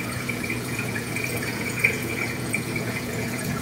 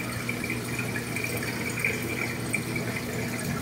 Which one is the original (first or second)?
second